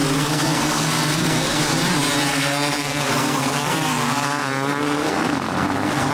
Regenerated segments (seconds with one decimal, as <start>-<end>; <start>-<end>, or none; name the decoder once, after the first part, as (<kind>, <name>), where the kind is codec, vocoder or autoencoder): 0.0-1.6 (codec, SNAC); 2.3-6.1

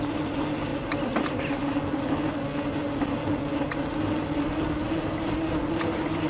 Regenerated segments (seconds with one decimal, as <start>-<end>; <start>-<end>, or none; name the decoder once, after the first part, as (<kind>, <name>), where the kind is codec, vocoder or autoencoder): none

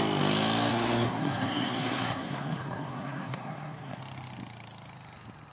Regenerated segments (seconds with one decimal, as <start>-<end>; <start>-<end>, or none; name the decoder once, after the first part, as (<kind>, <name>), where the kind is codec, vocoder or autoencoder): 0.7-4.0 (codec, SNAC)